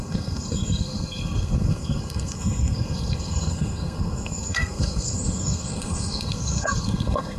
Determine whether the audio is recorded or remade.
remade